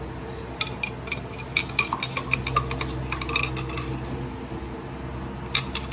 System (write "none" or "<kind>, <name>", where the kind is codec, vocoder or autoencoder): none